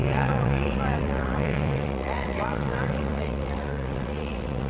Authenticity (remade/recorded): remade